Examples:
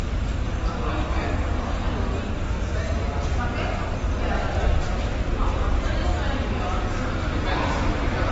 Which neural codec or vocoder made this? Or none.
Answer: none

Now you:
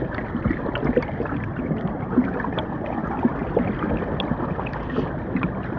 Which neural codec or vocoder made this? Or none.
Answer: none